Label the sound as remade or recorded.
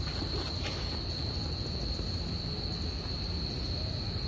recorded